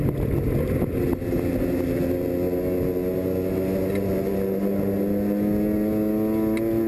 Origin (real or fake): real